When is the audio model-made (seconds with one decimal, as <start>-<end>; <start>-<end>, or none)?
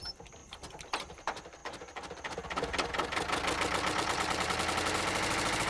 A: 0.4-1.0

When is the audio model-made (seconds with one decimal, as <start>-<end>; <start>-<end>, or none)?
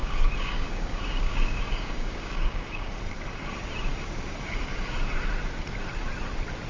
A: 0.0-3.0